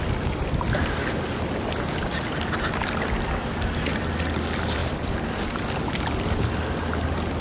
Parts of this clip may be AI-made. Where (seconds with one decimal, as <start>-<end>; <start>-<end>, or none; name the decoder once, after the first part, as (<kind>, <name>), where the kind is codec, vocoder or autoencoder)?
none